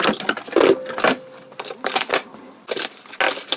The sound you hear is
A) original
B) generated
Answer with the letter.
A